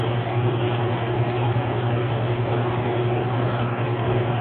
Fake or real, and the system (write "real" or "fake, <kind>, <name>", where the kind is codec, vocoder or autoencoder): fake, codec, DAC